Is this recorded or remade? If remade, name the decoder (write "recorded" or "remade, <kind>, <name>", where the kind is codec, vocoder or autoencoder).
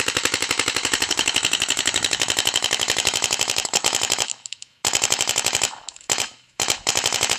remade, autoencoder, DAC-VAE